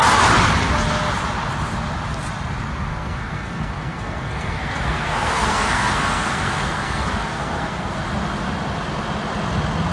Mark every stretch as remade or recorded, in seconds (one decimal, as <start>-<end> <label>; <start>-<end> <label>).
0.0-2.9 recorded; 2.9-8.1 remade; 8.1-9.9 recorded